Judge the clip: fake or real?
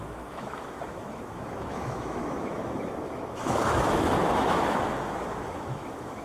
fake